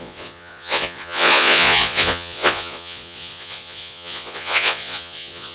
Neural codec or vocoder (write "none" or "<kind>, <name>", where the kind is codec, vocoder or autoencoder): vocoder, Vocos